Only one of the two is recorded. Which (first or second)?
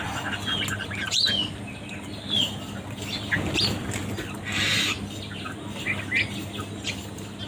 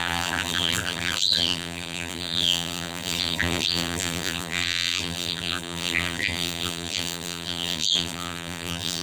first